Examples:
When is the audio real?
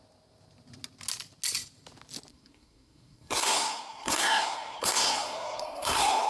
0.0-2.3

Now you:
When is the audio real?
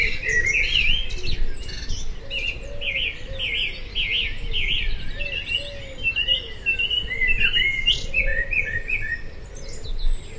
0.0-10.4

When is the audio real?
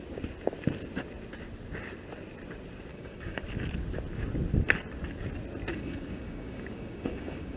0.0-2.9; 3.4-5.7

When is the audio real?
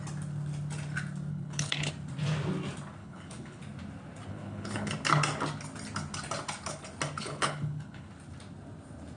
0.0-1.3; 1.9-3.0; 3.6-4.3; 4.9-7.2; 8.1-9.2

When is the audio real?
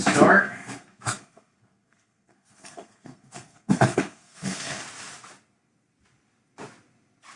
0.0-0.4; 4.8-7.4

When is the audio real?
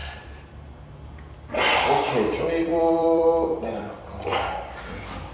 0.0-2.7; 4.5-5.3